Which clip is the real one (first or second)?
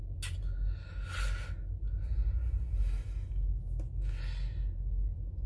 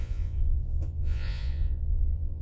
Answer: first